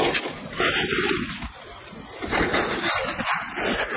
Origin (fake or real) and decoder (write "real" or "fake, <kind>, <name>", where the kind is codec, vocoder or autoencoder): real